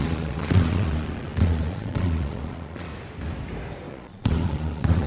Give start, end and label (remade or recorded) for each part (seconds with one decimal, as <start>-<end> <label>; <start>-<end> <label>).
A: 0.0-2.9 remade; 2.9-3.9 recorded; 3.9-5.1 remade